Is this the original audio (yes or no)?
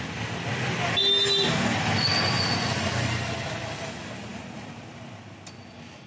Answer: yes